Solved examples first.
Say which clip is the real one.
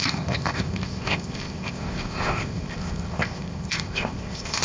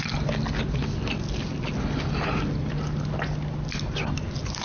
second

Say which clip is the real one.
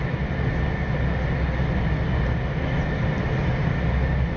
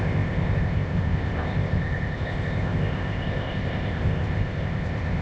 first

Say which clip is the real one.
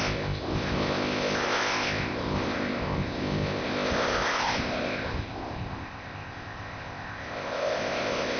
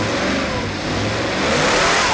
second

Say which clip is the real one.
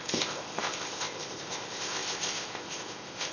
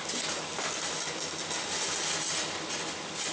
second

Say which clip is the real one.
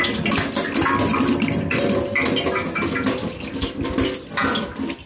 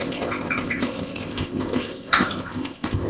first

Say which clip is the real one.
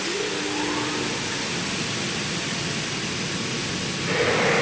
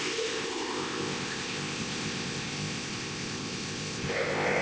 first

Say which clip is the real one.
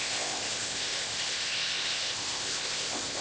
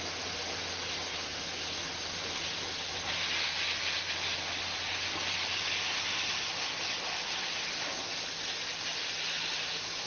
second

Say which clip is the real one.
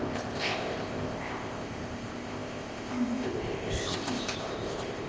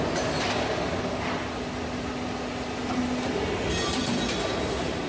second